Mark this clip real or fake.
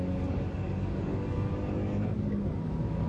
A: fake